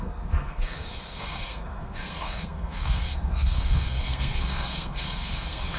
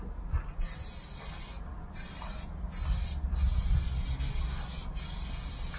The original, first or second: second